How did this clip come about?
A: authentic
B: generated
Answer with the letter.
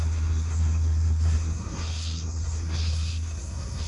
B